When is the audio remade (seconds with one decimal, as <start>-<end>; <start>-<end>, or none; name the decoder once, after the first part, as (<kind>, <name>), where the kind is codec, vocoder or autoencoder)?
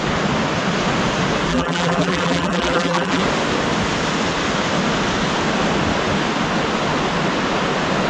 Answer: 1.5-3.2 (vocoder, BigVGAN v2)